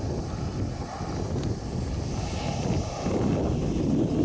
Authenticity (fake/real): real